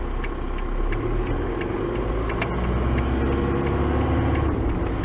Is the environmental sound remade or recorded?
recorded